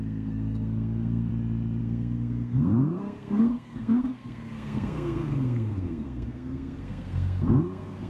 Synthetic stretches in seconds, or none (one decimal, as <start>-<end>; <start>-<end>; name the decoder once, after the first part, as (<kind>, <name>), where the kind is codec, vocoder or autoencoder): 0.0-1.3 (codec, SNAC); 1.8-8.1